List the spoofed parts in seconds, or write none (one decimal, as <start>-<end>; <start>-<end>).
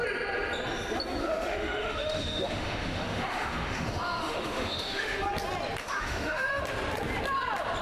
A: 1.2-5.2; 5.8-6.6